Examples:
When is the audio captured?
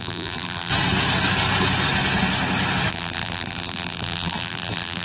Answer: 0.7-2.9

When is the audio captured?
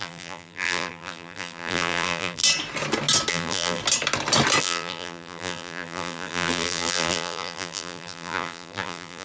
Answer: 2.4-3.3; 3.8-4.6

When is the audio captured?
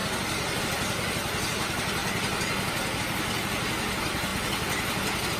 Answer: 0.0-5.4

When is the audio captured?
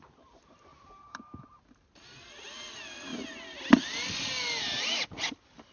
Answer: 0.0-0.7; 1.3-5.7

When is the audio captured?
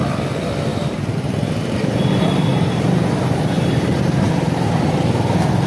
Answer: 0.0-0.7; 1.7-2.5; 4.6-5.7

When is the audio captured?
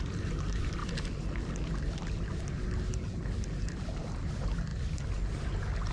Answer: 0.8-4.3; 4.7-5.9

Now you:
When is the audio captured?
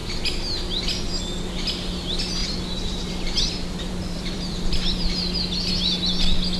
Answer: 0.0-2.4; 5.7-6.6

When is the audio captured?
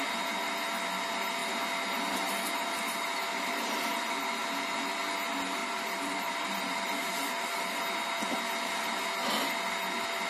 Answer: 0.0-3.3; 4.1-5.6; 7.8-10.3